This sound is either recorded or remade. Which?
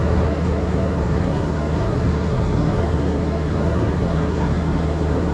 remade